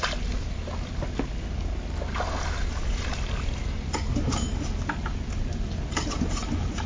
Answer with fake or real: real